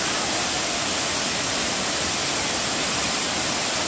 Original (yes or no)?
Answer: yes